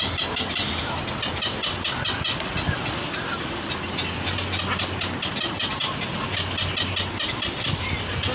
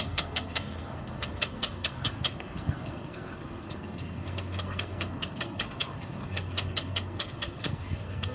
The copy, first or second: second